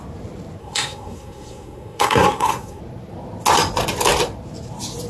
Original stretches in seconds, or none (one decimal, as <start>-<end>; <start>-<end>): 0.0-0.6; 2.8-5.1